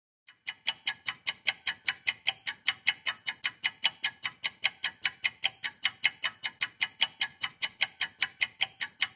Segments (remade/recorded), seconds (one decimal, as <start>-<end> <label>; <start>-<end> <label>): 0.0-7.3 recorded; 7.3-7.8 remade; 7.8-9.2 recorded